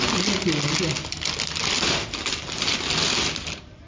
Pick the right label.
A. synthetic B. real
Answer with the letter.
B